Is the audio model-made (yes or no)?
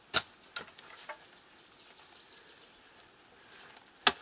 no